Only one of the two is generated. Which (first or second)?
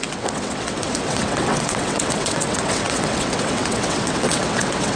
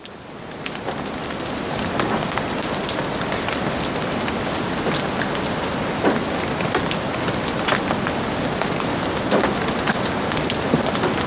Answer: first